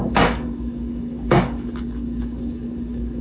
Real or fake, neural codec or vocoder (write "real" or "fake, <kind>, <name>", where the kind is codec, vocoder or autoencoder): fake, codec, DAC